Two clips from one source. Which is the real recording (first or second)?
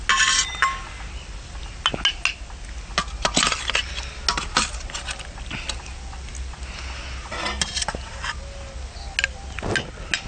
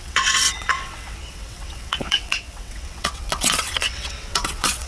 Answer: first